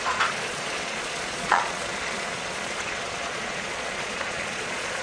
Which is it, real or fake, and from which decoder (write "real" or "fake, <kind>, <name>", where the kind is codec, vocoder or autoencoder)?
fake, vocoder, Vocos